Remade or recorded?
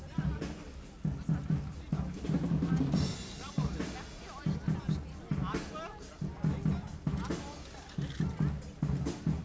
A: recorded